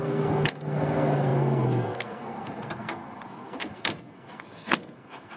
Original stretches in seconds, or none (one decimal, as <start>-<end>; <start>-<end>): none